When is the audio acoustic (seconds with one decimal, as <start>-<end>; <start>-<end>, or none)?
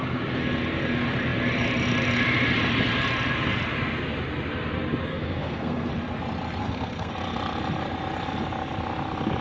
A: 0.0-5.1; 5.9-6.6; 7.1-9.4